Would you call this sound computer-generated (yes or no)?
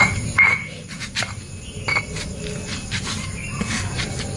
no